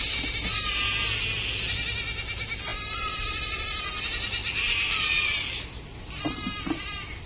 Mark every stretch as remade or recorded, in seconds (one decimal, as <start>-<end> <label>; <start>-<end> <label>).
0.0-7.3 recorded